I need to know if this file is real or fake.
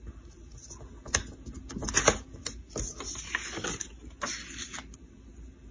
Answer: real